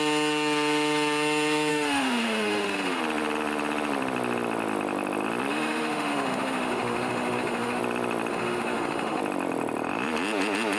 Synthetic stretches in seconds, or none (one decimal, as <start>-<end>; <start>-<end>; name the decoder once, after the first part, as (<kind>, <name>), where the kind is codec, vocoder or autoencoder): 1.7-3.0 (autoencoder, DAC-VAE); 5.5-7.8; 8.3-9.2